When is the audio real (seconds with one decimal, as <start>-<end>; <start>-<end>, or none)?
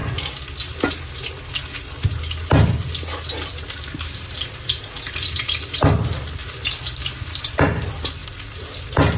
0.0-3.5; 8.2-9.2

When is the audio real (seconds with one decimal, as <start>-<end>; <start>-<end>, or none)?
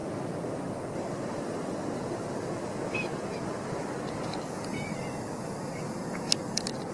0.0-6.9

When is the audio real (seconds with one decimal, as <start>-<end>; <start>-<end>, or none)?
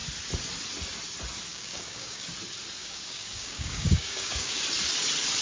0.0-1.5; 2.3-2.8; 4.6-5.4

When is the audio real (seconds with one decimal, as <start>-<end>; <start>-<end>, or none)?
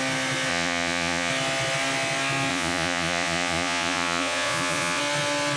0.0-0.5; 1.3-2.5; 5.0-5.6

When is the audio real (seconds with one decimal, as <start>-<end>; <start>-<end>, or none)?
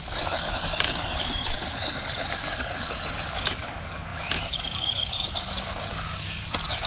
none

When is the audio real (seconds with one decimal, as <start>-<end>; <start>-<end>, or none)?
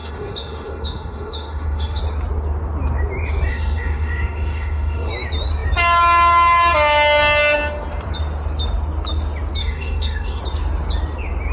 2.0-3.5; 5.1-9.6; 10.4-11.5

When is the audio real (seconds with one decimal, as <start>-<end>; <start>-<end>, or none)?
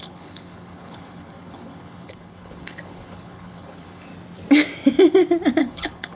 4.1-5.6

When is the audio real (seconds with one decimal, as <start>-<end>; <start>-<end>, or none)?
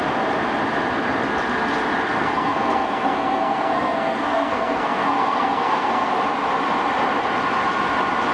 0.0-2.2; 6.1-8.3